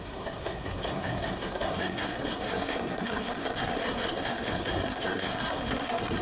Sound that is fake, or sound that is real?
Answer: fake